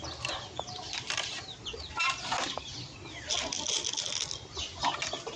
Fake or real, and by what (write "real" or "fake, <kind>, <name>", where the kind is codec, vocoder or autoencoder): real